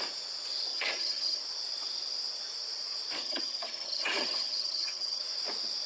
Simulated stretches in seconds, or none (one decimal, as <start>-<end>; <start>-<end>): 0.7-1.4; 3.2-5.2